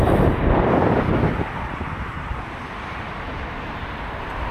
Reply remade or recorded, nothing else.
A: recorded